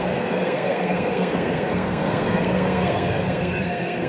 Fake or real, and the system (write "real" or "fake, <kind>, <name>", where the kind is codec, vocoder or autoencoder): fake, codec, SNAC